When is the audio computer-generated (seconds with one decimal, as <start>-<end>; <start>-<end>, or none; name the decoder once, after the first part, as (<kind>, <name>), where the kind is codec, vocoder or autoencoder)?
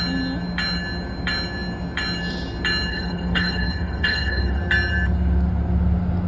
2.9-4.6 (codec, HILCodec)